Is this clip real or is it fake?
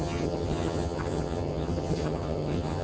fake